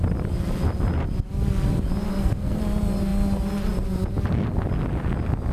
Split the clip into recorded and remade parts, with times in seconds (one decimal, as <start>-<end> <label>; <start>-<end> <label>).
0.0-2.1 recorded; 2.1-2.6 remade; 2.6-5.5 recorded